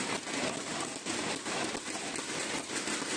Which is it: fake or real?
real